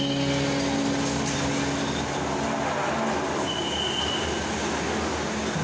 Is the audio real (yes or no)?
yes